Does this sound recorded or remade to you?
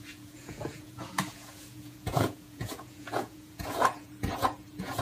remade